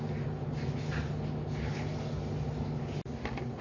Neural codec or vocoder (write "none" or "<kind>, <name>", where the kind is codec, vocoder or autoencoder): none